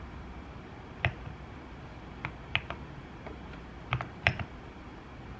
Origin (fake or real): real